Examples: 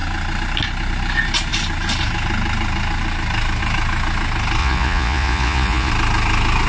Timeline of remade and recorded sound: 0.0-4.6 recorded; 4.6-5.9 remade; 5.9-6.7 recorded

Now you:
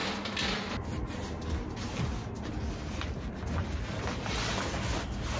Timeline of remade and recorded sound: 0.0-5.4 recorded

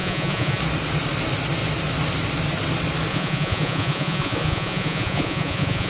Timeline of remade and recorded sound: 0.0-0.6 remade; 0.6-3.1 recorded; 3.1-5.9 remade

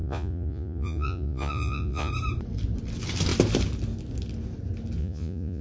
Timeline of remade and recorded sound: 0.0-2.1 remade; 2.1-5.0 recorded; 5.0-5.6 remade

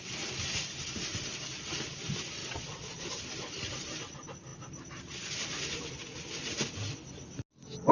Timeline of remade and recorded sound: 0.0-2.4 recorded; 2.4-3.0 remade; 3.0-7.9 recorded

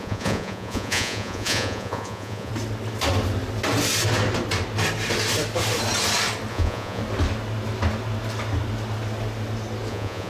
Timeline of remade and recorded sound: 0.0-2.5 remade; 2.5-6.5 recorded; 6.5-7.0 remade; 7.0-9.9 recorded; 9.9-10.3 remade